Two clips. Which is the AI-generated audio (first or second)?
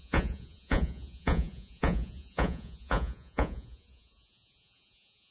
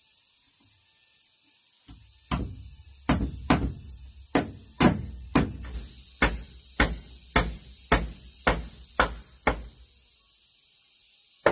first